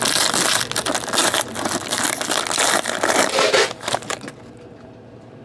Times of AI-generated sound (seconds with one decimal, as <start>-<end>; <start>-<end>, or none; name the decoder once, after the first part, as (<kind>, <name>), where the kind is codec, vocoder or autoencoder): none